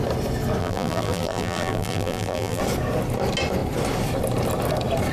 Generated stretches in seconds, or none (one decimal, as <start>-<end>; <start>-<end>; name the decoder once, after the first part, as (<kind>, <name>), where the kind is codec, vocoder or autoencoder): 0.6-2.6 (vocoder, BigVGAN v2)